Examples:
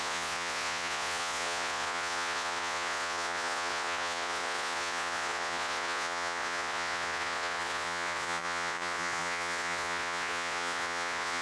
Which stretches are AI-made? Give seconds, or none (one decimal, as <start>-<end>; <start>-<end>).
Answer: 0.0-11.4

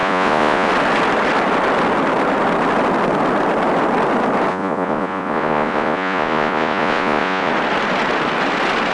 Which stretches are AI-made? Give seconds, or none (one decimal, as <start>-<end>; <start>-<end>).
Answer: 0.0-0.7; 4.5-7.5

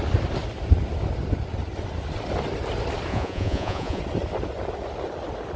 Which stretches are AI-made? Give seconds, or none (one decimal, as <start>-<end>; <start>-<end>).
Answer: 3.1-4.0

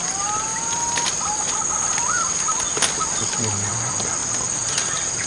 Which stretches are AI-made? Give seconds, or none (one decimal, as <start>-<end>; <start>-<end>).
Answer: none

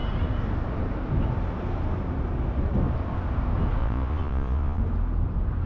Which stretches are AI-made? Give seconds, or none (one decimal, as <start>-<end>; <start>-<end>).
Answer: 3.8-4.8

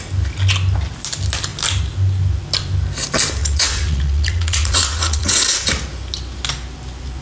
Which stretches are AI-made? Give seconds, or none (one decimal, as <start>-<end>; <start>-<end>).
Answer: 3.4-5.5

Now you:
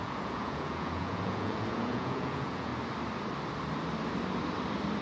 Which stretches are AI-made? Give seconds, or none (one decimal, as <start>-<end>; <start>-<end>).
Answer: 0.0-2.7